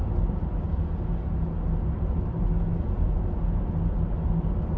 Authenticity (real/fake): real